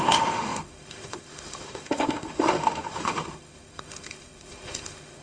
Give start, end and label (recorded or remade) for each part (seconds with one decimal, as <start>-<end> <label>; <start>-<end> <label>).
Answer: 0.0-5.2 remade